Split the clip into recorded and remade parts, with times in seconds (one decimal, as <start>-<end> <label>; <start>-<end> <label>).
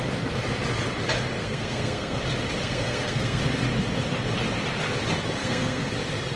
0.0-1.4 recorded; 1.4-2.2 remade; 2.2-2.6 recorded; 2.6-3.4 remade; 3.4-5.4 recorded; 5.4-5.9 remade; 5.9-6.4 recorded